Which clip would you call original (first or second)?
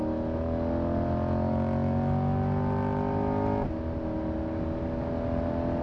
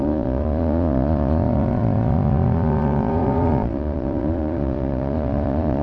first